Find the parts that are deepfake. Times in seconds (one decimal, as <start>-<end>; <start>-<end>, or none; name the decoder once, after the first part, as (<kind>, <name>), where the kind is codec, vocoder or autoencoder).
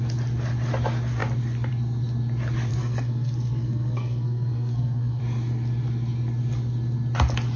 2.7-5.2 (codec, SNAC)